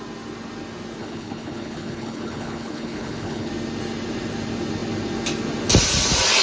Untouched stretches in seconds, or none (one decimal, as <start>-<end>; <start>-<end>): 0.0-1.0; 3.5-6.4